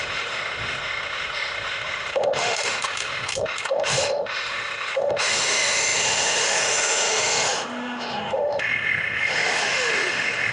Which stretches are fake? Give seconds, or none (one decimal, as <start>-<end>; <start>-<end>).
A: 0.0-10.5